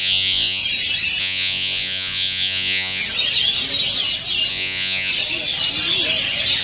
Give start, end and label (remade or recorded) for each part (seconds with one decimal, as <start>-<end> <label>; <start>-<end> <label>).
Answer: 0.0-0.6 remade; 0.6-1.2 recorded; 1.2-3.0 remade; 3.0-4.5 recorded; 4.5-5.1 remade; 5.1-6.6 recorded